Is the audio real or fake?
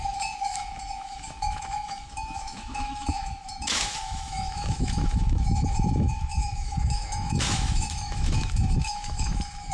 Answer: fake